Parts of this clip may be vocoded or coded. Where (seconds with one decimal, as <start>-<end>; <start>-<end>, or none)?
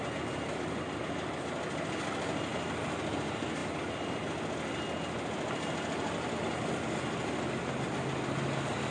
none